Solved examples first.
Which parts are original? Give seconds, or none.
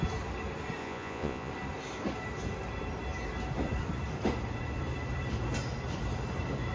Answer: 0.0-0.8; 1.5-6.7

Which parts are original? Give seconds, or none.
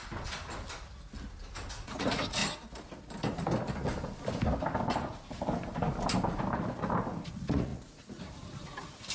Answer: 0.0-1.7; 2.4-7.3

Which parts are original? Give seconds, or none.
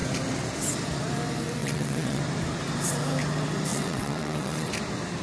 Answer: 0.0-1.6; 2.2-3.7; 4.7-5.2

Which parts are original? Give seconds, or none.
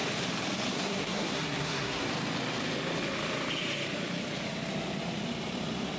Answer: 0.0-0.7; 2.1-6.0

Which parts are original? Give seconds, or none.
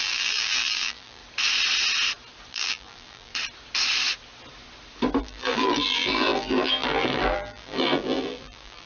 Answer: 1.2-2.5; 3.3-5.2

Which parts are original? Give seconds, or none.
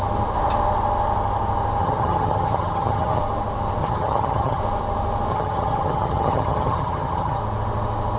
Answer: 0.0-1.8; 3.2-3.8; 4.6-5.3; 7.4-8.2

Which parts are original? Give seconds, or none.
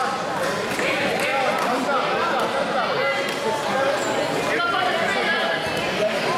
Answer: 0.0-6.4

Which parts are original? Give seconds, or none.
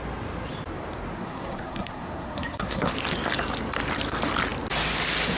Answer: 0.0-1.2; 2.9-5.4